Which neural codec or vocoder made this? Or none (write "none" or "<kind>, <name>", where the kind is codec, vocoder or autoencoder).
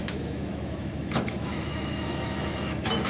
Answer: autoencoder, DAC-VAE